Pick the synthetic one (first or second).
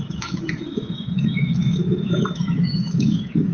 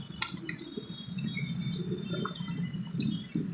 first